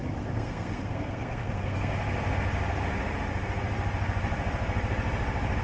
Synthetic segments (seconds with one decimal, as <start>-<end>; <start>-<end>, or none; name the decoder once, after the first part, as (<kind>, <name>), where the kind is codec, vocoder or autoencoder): 0.0-1.9 (codec, SNAC)